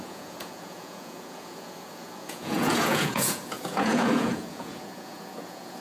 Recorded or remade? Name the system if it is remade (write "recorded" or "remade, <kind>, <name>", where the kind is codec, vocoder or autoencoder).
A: remade, vocoder, Vocos